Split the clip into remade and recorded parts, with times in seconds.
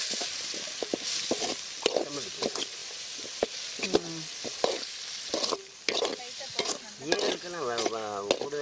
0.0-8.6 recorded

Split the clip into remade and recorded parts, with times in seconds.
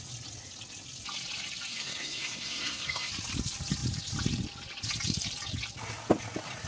0.0-1.7 recorded; 1.7-3.1 remade; 3.1-6.7 recorded